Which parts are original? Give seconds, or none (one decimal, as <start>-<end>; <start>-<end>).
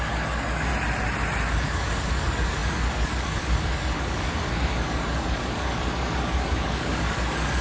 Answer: 0.7-1.5